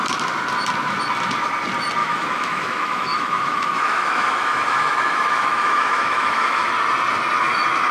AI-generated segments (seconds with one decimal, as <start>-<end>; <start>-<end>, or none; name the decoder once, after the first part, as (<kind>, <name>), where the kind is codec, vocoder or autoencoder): 2.0-6.7 (autoencoder, DAC-VAE)